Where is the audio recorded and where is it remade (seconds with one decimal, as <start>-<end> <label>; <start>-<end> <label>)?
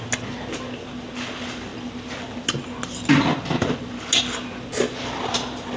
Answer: 0.0-5.8 recorded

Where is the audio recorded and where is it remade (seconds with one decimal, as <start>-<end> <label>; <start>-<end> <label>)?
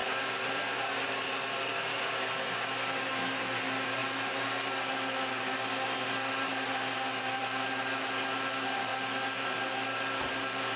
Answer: 0.0-2.1 remade; 2.1-4.0 recorded; 4.0-5.7 remade; 5.7-8.9 recorded; 8.9-9.5 remade; 9.5-10.8 recorded